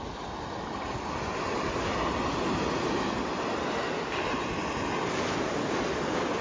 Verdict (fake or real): real